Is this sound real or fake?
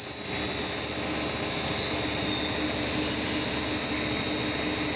real